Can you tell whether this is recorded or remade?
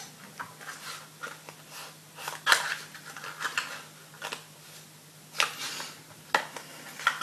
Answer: recorded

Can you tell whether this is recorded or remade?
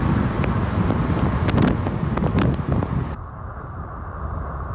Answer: recorded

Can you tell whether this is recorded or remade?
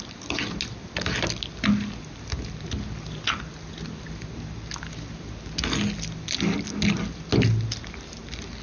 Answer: recorded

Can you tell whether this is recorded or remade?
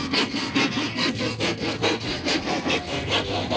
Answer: remade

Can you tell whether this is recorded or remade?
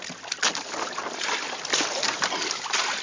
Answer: recorded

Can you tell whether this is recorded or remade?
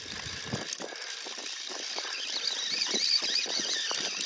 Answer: recorded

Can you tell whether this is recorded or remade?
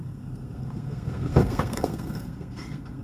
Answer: remade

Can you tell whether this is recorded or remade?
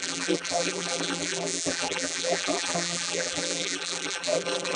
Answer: remade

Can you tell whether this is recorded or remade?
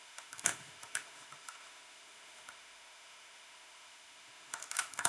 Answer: remade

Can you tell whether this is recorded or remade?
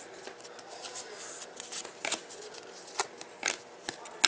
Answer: recorded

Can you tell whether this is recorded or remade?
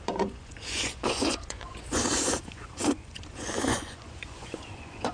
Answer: remade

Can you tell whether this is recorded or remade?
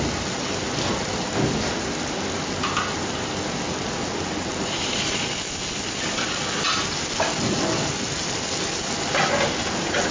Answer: recorded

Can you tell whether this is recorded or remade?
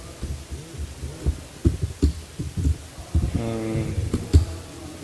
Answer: recorded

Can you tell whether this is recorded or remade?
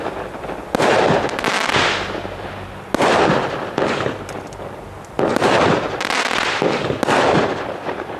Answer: recorded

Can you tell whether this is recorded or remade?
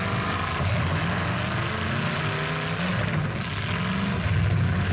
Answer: recorded